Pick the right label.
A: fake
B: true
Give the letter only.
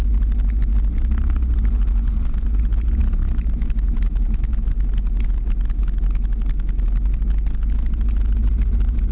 B